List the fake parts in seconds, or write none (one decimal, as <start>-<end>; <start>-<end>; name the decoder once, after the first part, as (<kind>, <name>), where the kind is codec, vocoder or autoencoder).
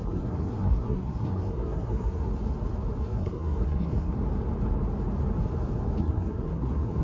0.0-2.3 (codec, SNAC); 3.0-4.2; 6.0-7.0